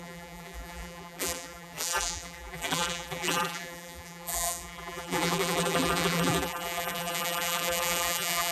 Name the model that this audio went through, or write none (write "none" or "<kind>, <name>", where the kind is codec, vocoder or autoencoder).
vocoder, BigVGAN v2